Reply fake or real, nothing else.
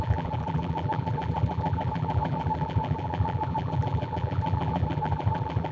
fake